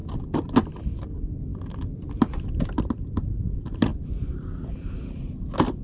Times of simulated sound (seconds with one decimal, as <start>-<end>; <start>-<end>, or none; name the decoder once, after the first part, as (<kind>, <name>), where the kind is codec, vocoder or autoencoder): none

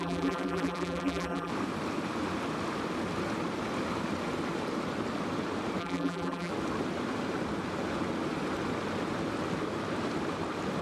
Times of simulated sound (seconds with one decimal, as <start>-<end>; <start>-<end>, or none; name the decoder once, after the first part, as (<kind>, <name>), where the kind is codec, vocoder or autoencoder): 0.0-1.5 (vocoder, BigVGAN v2); 5.8-6.5

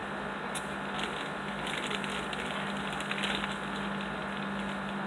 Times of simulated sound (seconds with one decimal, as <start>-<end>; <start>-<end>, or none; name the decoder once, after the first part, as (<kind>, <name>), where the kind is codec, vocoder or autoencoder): none

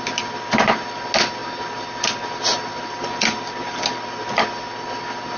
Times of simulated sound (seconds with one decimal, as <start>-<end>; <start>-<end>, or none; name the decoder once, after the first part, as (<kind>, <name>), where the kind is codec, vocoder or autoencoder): none

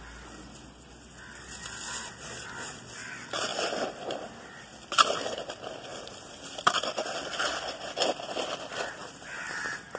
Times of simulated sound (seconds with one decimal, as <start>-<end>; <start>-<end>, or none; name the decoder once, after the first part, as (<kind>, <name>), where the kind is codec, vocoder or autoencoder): 3.5-5.1 (vocoder, BigVGAN v2); 5.9-9.2

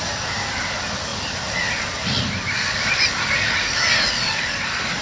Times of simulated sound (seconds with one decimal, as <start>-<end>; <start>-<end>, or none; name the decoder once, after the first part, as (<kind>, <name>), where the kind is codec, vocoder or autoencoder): 0.0-1.1 (vocoder, BigVGAN v2); 4.1-5.0

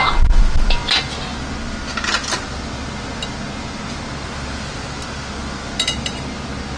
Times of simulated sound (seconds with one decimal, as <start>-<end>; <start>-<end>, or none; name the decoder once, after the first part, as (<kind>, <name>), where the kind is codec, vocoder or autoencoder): none

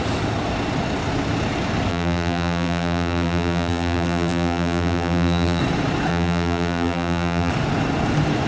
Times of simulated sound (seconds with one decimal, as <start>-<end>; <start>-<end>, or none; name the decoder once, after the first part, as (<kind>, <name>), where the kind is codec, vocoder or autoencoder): 1.9-5.6 (vocoder, BigVGAN v2); 6.1-7.5